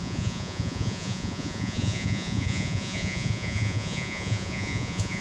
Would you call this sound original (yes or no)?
no